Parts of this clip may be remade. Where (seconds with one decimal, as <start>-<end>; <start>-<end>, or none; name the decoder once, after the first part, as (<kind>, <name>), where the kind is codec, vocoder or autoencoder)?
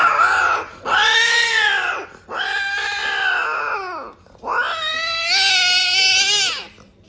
none